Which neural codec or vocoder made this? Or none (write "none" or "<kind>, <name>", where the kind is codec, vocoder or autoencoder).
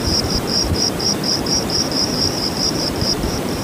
vocoder, BigVGAN v2